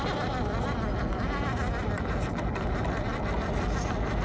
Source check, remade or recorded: recorded